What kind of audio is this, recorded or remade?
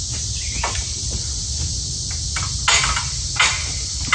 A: recorded